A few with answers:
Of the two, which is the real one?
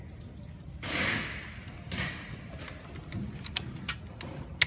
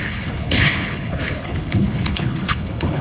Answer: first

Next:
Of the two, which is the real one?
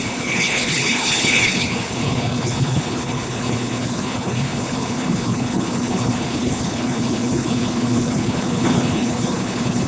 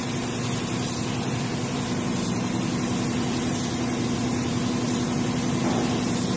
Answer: second